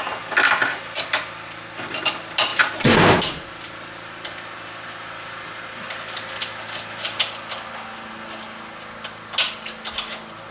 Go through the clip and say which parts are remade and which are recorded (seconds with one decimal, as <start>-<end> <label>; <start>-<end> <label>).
0.0-2.5 recorded; 2.5-3.2 remade; 3.2-10.5 recorded